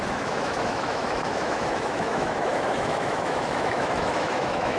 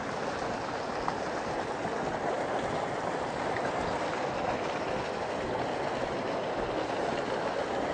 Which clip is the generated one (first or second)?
first